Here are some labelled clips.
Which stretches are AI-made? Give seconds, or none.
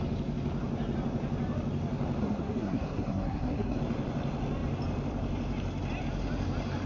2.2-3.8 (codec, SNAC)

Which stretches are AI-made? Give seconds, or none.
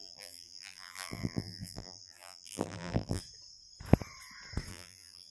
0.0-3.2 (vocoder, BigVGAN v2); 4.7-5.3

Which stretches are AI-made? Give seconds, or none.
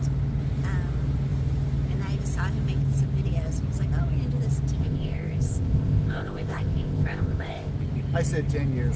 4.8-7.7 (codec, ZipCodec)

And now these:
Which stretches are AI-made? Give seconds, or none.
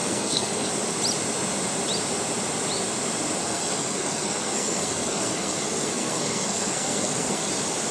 0.0-0.7 (codec, SNAC); 3.4-7.5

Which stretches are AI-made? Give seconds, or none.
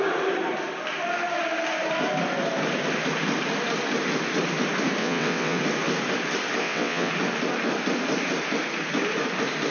5.0-5.6 (vocoder, WaveNeXt); 6.6-7.1